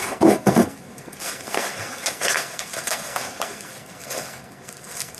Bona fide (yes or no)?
no